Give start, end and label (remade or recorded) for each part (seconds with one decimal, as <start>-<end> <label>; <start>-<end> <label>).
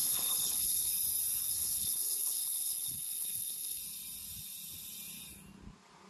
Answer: 0.0-0.9 remade; 0.9-1.5 recorded; 1.5-3.8 remade; 3.8-6.1 recorded